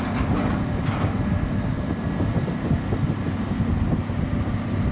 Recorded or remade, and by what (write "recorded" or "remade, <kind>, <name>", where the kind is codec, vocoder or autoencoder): recorded